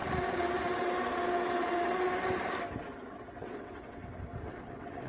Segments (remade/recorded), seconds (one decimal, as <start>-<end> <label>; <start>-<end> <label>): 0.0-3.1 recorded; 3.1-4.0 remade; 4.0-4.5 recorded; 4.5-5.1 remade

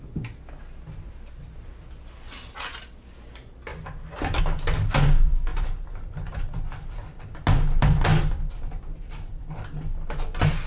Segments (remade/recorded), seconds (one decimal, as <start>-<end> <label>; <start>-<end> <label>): 0.0-3.7 recorded; 3.7-4.4 remade; 4.4-5.5 recorded; 5.5-6.6 remade; 6.6-8.1 recorded; 8.1-9.5 remade; 9.5-10.7 recorded

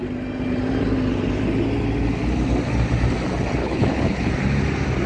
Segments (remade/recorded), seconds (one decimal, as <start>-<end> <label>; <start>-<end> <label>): 0.0-3.6 recorded; 3.6-4.3 remade; 4.3-5.1 recorded

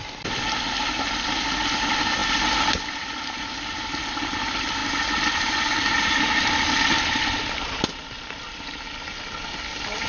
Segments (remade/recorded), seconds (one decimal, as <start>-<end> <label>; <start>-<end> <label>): 0.0-10.1 recorded

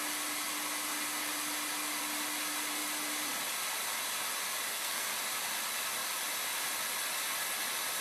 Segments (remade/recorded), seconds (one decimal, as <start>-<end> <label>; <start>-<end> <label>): 0.0-4.7 recorded; 4.7-5.2 remade; 5.2-8.0 recorded